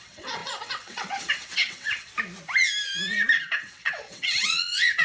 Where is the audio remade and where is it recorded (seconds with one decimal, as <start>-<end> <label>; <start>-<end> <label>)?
0.0-2.1 remade; 2.1-3.4 recorded; 3.4-5.0 remade

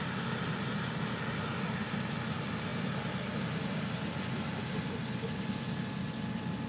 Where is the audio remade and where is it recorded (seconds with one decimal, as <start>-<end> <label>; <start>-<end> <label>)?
0.0-6.7 recorded

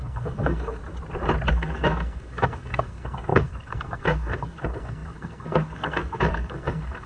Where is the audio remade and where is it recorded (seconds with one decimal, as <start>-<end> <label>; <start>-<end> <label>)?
0.0-0.8 remade; 0.8-1.5 recorded; 1.5-7.1 remade

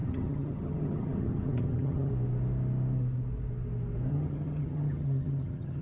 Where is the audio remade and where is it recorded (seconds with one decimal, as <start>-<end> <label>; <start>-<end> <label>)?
0.0-2.1 remade; 2.1-4.1 recorded; 4.1-5.8 remade

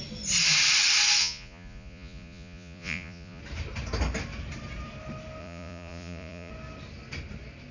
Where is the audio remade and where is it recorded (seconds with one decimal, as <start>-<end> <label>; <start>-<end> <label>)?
0.0-1.2 recorded; 1.2-3.4 remade; 3.4-5.4 recorded; 5.4-6.5 remade; 6.5-7.7 recorded